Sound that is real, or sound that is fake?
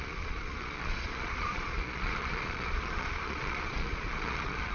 fake